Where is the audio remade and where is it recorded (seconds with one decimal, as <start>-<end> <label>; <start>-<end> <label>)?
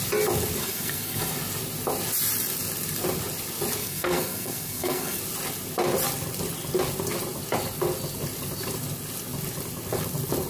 0.0-0.6 recorded; 0.6-1.3 remade; 1.3-3.8 recorded; 3.8-5.2 remade; 5.2-10.5 recorded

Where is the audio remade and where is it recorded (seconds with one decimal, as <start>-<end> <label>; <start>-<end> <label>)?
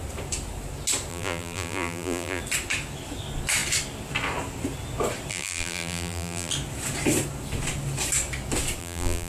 0.0-1.1 recorded; 1.1-2.4 remade; 2.4-5.3 recorded; 5.3-6.5 remade; 6.5-8.8 recorded; 8.8-9.3 remade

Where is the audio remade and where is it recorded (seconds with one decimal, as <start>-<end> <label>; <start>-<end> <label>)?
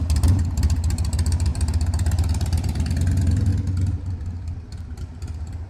0.0-3.5 remade; 3.5-5.0 recorded; 5.0-5.7 remade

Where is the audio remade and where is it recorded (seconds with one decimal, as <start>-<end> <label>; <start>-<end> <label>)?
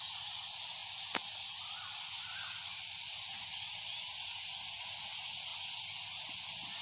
0.0-6.8 recorded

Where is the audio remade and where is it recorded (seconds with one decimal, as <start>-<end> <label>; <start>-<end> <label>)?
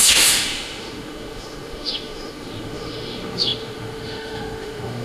0.0-5.0 remade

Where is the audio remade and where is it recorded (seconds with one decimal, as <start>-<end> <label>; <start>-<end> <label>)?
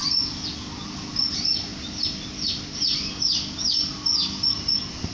0.0-5.1 recorded